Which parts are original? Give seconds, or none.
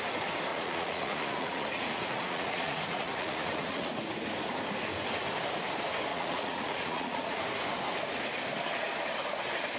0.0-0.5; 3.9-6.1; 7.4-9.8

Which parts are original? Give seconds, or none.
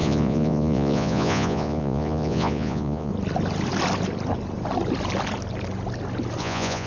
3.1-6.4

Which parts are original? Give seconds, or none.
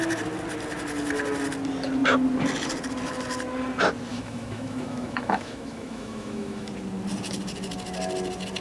0.0-4.1; 6.7-8.6